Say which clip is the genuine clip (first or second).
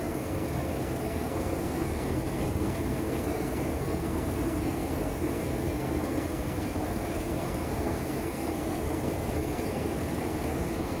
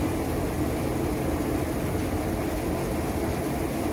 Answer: second